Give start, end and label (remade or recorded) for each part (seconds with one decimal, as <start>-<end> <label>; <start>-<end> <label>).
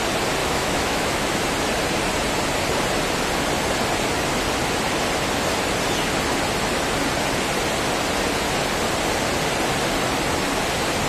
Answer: 0.0-0.4 recorded; 0.4-1.4 remade; 1.4-11.1 recorded